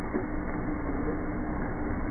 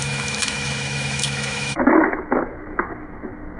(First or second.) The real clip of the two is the first